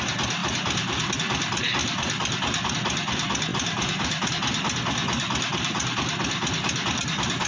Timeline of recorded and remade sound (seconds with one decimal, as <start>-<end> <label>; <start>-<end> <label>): 0.0-0.4 recorded; 0.4-1.1 remade; 1.1-1.8 recorded; 1.8-2.7 remade; 2.7-3.5 recorded; 3.5-4.3 remade; 4.3-7.5 recorded